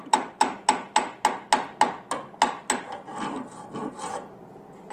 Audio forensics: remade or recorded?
recorded